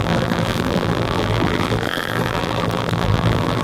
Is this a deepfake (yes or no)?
yes